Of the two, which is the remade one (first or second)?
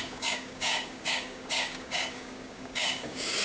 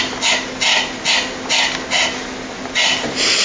first